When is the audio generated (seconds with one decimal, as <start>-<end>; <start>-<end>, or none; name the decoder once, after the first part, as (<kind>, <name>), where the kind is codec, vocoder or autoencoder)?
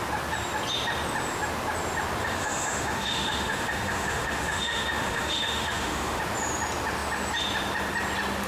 2.2-6.2 (autoencoder, DAC-VAE)